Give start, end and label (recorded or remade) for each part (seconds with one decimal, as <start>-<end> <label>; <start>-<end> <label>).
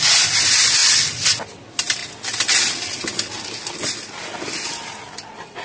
0.0-5.6 recorded